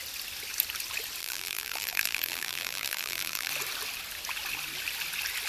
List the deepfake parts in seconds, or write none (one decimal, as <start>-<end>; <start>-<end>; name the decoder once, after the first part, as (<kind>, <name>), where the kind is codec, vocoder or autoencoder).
1.2-3.5 (vocoder, BigVGAN v2)